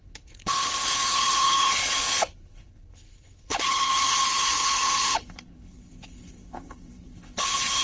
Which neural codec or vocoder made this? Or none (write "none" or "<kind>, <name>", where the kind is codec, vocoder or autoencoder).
codec, HILCodec